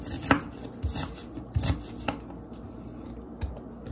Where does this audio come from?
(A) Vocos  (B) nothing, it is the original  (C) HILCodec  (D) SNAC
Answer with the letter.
B